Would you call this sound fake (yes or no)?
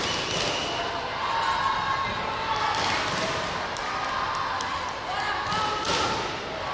no